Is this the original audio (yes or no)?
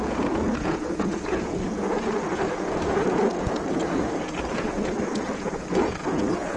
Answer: no